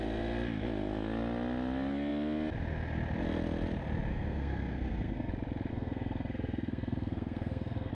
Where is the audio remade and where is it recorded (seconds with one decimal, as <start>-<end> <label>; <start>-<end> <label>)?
0.0-4.1 recorded; 4.1-5.3 remade; 5.3-5.7 recorded; 5.7-7.9 remade